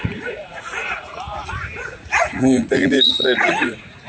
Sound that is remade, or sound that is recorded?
remade